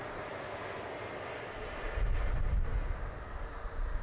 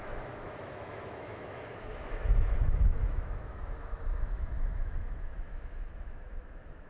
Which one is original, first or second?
first